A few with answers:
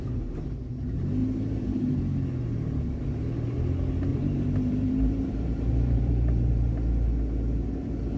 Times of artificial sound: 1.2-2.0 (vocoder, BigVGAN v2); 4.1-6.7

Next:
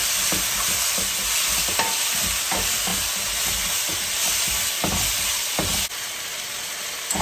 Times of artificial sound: 0.0-1.6 (vocoder, BigVGAN v2)